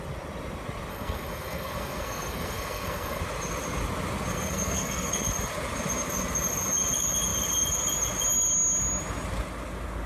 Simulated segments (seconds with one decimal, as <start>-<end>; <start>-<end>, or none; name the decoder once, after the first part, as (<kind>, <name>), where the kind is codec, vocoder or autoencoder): 0.9-3.2 (codec, SNAC); 4.3-5.1